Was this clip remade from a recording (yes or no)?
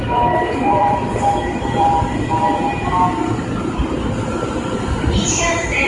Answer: yes